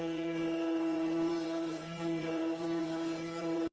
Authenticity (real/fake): fake